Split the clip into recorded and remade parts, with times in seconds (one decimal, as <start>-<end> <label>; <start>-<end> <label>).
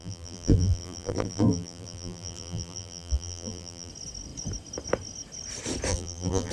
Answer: 0.0-3.9 remade; 3.9-5.9 recorded; 5.9-6.5 remade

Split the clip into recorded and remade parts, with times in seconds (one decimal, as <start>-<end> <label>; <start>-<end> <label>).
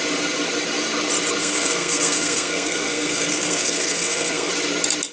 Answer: 0.0-1.4 recorded; 1.4-4.5 remade; 4.5-5.1 recorded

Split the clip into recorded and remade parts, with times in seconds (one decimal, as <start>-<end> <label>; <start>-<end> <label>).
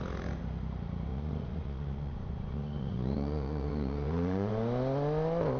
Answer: 0.0-1.1 recorded; 1.1-4.5 remade; 4.5-5.6 recorded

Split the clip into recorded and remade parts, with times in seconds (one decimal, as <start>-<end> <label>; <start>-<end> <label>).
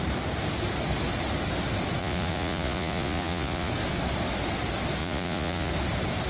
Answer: 0.0-2.0 recorded; 2.0-3.7 remade; 3.7-5.0 recorded; 5.0-5.7 remade; 5.7-6.3 recorded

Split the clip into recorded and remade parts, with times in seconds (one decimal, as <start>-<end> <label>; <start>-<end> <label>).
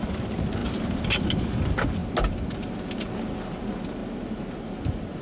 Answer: 0.0-5.2 recorded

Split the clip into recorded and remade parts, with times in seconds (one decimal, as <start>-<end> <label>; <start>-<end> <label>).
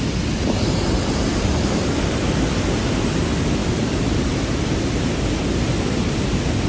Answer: 0.0-1.3 recorded; 1.3-2.2 remade; 2.2-3.6 recorded; 3.6-5.7 remade; 5.7-6.7 recorded